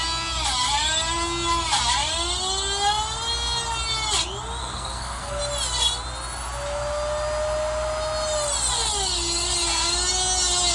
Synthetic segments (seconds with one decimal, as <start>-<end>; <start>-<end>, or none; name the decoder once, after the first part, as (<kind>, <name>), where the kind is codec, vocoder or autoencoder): 4.6-5.4 (codec, SNAC)

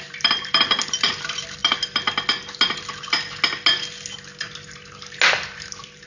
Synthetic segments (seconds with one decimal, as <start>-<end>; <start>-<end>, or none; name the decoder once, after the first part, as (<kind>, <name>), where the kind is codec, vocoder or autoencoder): 0.0-1.6 (vocoder, BigVGAN v2); 5.3-6.1

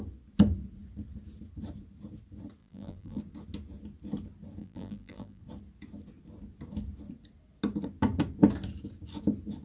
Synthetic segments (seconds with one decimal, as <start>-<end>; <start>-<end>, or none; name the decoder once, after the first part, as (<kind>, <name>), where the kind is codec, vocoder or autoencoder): 2.6-3.2 (vocoder, BigVGAN v2); 4.6-5.4

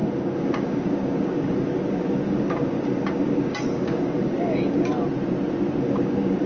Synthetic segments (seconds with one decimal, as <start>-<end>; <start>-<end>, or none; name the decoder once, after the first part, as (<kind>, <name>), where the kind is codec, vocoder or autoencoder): 0.0-4.9 (codec, DAC); 5.8-6.5

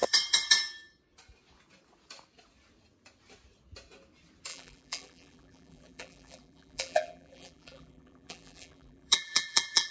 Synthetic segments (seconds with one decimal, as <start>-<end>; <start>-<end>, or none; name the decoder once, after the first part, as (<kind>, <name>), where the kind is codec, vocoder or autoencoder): 4.5-9.9 (vocoder, BigVGAN v2)

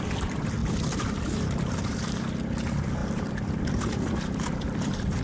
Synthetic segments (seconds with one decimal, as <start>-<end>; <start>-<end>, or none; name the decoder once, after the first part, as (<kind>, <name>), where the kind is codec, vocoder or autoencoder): 0.6-1.8 (vocoder, BigVGAN v2); 3.0-4.8